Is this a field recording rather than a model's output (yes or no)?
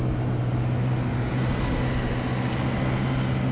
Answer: yes